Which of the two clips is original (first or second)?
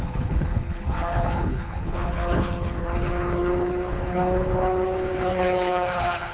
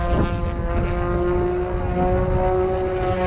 second